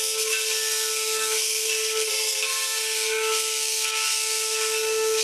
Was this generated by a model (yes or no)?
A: yes